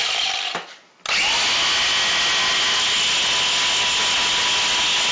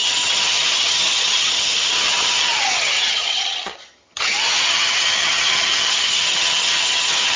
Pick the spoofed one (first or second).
second